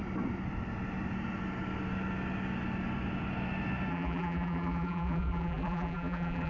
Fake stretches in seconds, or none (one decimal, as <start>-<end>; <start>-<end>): 3.9-6.5

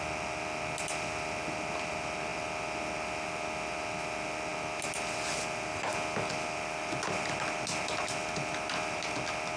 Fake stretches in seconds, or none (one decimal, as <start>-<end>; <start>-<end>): none

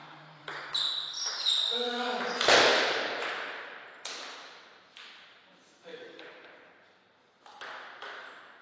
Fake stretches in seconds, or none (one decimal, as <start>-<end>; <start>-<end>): 0.0-0.9; 2.7-4.0; 5.9-6.5

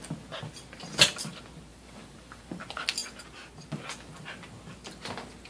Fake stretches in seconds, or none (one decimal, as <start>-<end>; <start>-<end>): 1.7-2.5

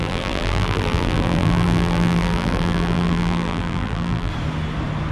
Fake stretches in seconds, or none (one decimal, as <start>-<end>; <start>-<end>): 0.0-4.3